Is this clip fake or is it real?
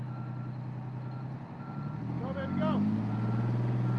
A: real